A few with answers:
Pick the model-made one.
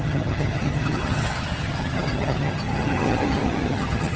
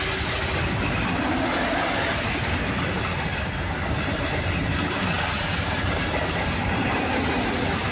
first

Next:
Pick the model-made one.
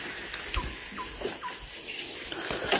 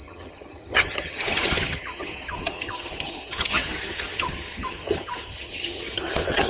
second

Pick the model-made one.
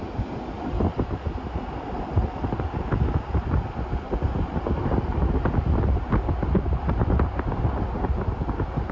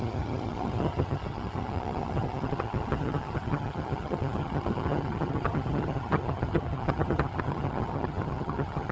second